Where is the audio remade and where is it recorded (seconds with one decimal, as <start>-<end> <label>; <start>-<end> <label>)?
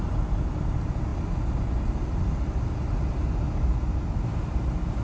0.0-5.0 recorded